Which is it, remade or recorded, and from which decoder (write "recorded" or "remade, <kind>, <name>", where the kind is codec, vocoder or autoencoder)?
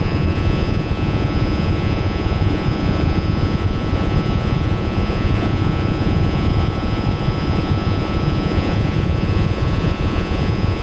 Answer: remade, vocoder, Vocos